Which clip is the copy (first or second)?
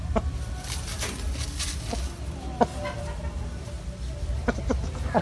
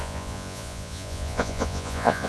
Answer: second